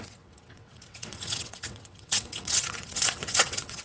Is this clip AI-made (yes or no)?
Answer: yes